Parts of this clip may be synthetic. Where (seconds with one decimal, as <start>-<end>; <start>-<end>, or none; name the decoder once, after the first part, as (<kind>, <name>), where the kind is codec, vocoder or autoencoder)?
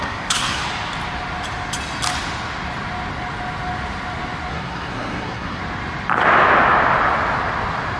0.0-0.6 (codec, SNAC); 4.5-5.6